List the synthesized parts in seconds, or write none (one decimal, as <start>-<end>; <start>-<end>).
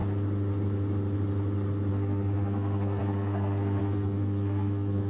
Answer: 1.9-5.1